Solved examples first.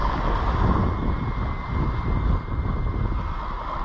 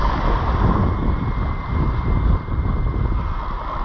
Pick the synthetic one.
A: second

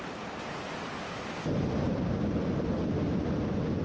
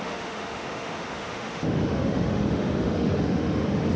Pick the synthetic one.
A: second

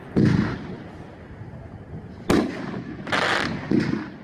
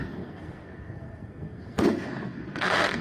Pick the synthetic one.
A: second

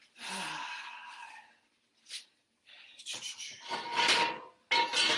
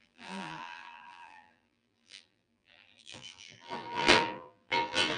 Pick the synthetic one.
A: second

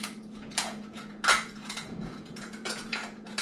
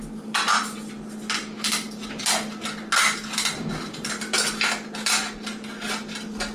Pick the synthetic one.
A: first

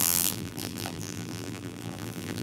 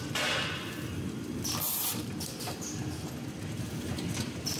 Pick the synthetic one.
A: first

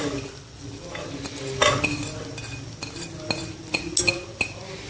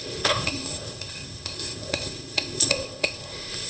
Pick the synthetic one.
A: second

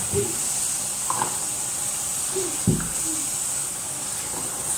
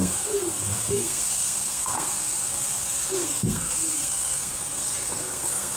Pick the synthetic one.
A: second